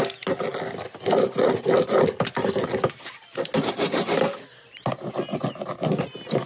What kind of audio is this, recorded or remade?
recorded